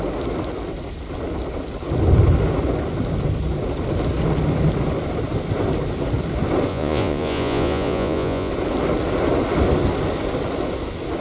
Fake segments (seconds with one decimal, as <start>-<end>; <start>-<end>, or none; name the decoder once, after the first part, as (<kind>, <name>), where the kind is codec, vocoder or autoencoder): 6.7-8.5 (vocoder, Vocos)